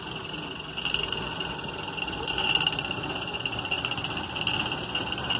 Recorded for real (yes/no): yes